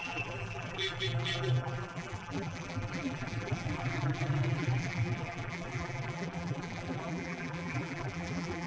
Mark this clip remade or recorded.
remade